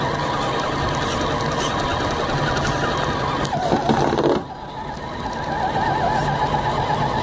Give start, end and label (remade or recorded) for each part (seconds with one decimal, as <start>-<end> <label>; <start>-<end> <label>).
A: 0.0-7.2 recorded